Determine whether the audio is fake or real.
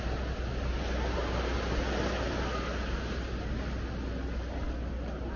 real